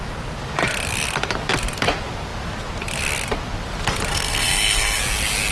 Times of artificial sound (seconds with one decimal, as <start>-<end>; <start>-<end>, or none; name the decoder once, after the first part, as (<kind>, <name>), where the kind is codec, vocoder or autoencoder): 4.1-5.0 (codec, SNAC)